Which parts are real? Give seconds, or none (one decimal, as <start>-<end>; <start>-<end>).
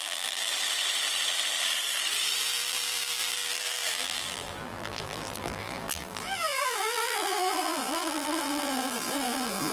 0.5-2.4